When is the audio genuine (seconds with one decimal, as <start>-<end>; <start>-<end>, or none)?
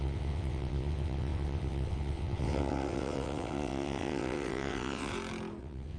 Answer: 5.1-5.6